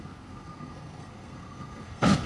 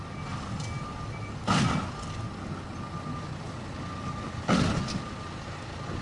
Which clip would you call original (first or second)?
second